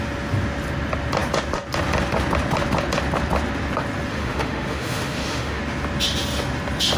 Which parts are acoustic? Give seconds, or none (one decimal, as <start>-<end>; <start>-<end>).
0.0-4.1; 5.6-7.0